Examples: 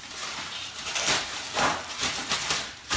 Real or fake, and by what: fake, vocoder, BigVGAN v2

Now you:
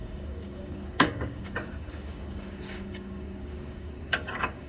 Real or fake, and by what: fake, codec, DAC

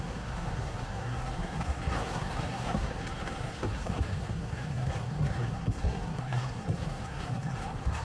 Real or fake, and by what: fake, codec, SNAC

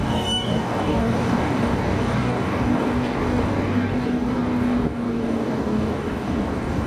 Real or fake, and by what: fake, codec, DAC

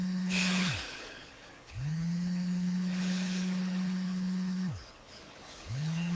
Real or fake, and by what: fake, codec, HILCodec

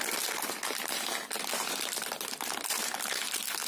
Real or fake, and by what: real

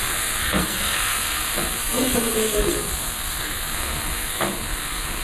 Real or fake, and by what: fake, codec, SNAC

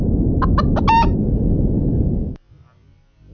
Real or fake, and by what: real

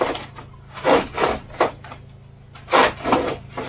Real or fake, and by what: real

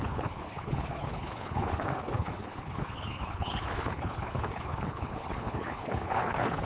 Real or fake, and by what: fake, codec, HILCodec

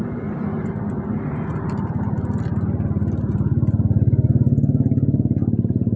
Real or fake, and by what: real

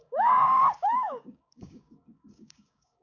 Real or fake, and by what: fake, codec, DAC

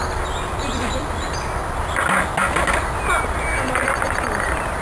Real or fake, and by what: real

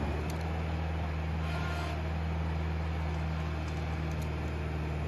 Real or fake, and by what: real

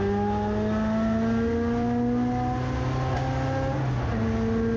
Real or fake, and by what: real